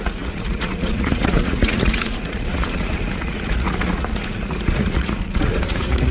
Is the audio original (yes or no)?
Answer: no